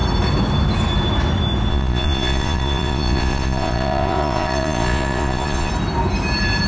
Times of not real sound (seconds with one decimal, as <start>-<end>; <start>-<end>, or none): 1.7-5.7